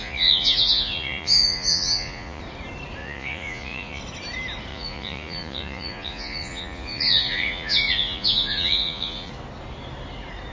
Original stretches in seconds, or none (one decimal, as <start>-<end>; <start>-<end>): 2.4-3.0; 4.0-4.7; 9.3-10.5